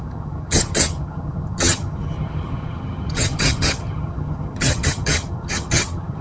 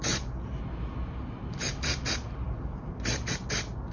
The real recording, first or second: second